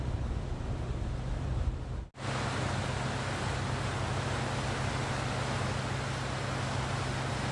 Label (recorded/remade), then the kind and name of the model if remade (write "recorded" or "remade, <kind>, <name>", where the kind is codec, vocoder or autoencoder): recorded